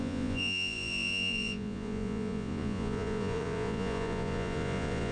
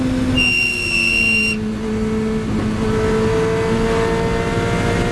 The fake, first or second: first